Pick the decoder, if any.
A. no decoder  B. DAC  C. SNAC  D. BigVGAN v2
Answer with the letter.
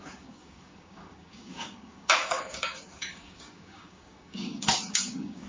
B